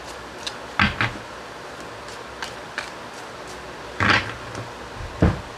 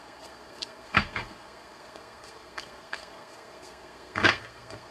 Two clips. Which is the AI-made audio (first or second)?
second